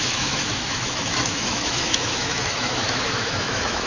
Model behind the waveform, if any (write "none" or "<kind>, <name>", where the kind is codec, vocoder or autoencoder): autoencoder, DAC-VAE